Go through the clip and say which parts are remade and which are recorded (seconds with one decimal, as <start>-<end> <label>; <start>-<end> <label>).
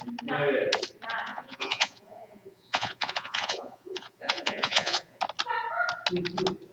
0.0-1.3 recorded; 1.3-5.2 remade; 5.2-6.7 recorded